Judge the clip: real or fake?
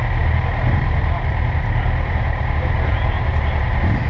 real